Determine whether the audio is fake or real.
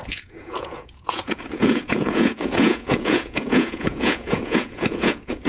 fake